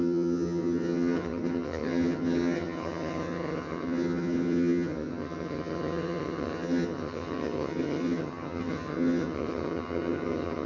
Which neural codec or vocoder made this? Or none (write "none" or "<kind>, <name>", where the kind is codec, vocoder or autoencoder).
vocoder, HiFi-GAN